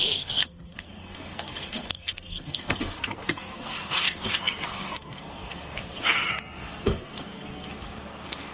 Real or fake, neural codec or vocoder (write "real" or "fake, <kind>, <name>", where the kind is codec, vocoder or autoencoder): fake, codec, SNAC